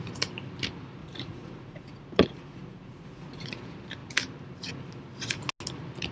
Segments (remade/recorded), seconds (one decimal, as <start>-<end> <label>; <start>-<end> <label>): 0.0-1.0 recorded; 1.0-3.6 remade; 3.6-6.1 recorded